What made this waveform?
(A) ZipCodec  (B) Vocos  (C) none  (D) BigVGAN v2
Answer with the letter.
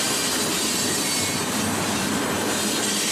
C